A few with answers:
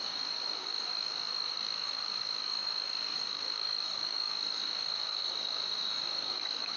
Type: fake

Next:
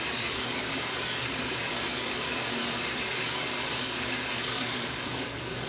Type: fake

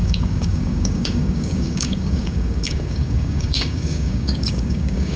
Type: fake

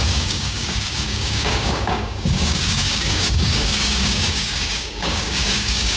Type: fake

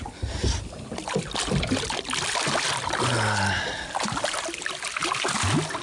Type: real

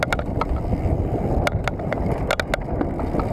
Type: real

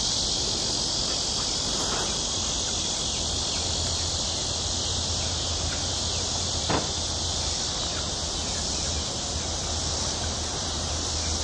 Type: real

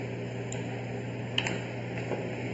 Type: real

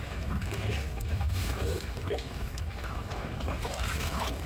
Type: fake